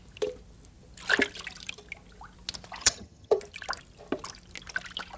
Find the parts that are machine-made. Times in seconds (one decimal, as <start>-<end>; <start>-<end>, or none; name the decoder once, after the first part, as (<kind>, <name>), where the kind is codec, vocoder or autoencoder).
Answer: 2.8-3.4 (vocoder, HiFi-GAN)